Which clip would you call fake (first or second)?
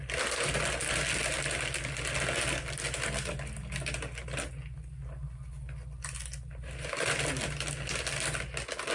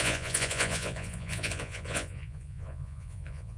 second